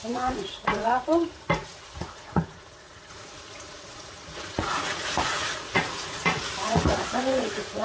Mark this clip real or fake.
fake